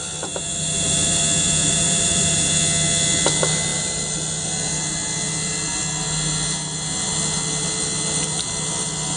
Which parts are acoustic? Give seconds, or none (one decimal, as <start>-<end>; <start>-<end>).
0.0-0.5; 1.2-1.6; 2.5-9.2